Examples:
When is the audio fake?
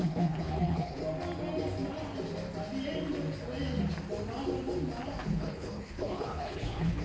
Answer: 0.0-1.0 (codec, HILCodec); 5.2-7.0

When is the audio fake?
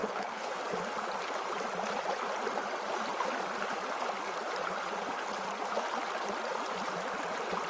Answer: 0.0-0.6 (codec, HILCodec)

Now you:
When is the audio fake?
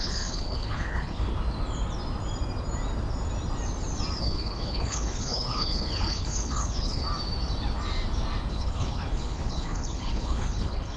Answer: 0.0-1.3 (codec, HILCodec); 4.2-7.0; 8.5-11.0